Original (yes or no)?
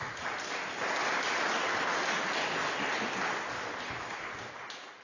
yes